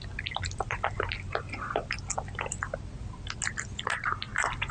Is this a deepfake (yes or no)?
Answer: no